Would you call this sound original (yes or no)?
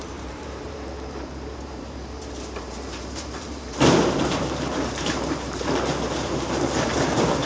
no